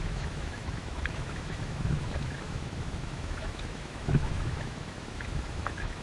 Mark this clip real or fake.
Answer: fake